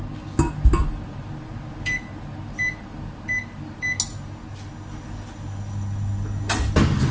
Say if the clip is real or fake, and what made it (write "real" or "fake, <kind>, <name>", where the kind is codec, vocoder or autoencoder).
real